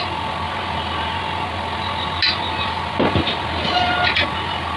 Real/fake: real